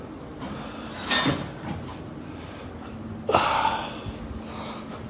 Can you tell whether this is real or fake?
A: real